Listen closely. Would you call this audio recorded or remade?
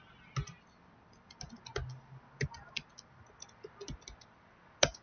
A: recorded